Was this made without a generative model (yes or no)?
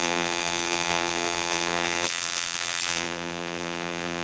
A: no